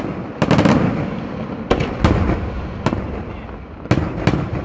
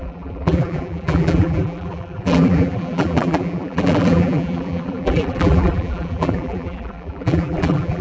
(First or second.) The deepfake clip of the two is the second